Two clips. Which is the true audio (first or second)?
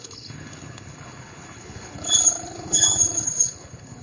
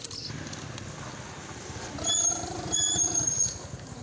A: second